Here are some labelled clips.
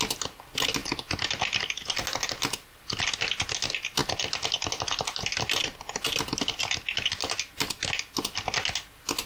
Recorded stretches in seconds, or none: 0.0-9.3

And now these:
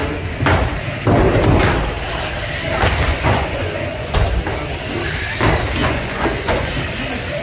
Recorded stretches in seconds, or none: 0.0-3.1; 4.3-5.8; 6.7-7.4

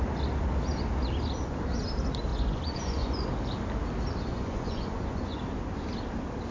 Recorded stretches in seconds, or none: 0.0-2.3; 3.3-4.3; 5.4-6.5

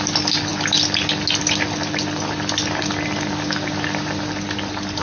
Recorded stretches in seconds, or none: 0.0-5.0

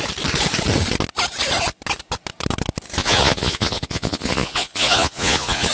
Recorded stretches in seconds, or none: 0.0-3.0

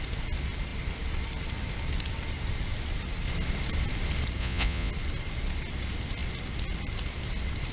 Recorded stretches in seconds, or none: 0.0-4.4; 4.9-7.7

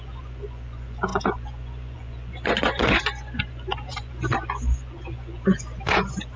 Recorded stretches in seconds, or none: none